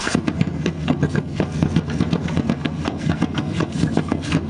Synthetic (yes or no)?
yes